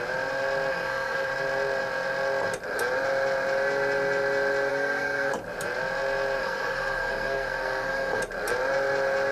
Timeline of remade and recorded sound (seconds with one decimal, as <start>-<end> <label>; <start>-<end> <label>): 0.0-0.7 recorded; 0.7-1.3 remade; 1.3-4.7 recorded; 4.7-5.3 remade; 5.3-6.4 recorded; 6.4-8.2 remade; 8.2-9.3 recorded